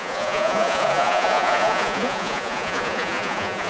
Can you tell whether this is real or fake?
fake